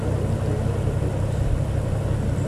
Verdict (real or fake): real